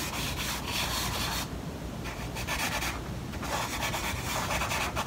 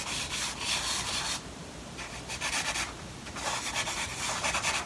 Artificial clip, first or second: second